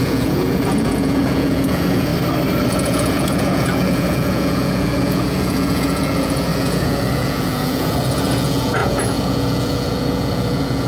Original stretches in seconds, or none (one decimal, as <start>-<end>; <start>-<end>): 2.1-2.7